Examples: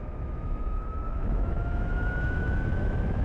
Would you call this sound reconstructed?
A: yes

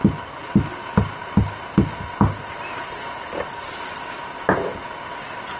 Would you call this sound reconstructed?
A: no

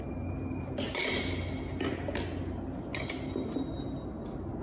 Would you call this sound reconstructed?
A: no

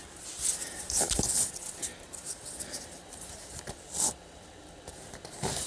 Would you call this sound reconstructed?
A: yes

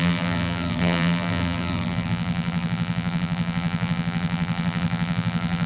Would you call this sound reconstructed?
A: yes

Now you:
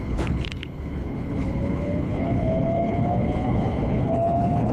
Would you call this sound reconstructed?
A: yes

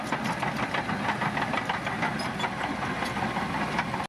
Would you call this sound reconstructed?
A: no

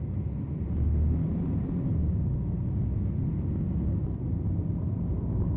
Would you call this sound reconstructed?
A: no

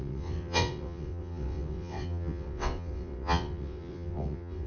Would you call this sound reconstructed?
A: yes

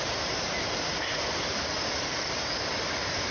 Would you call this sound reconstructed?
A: no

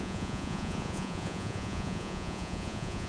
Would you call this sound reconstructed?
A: yes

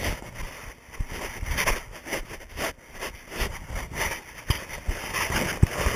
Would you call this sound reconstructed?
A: no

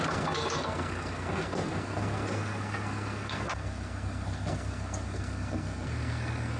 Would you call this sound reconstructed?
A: yes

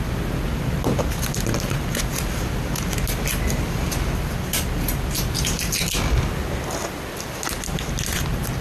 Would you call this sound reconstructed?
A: no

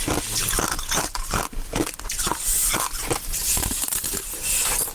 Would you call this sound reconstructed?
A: no